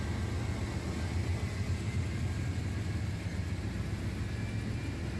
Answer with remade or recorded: recorded